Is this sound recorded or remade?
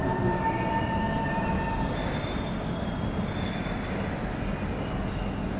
recorded